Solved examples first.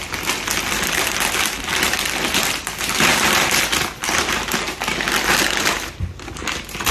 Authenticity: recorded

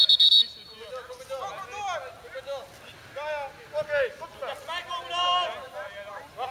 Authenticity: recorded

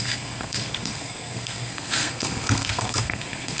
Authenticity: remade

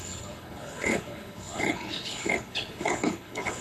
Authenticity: remade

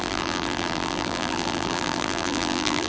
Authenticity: remade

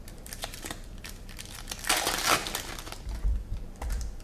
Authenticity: remade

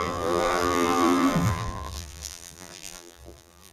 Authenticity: remade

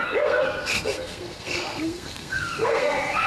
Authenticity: remade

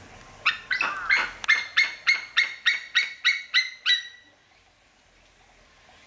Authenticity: recorded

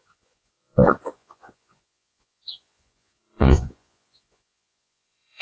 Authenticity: remade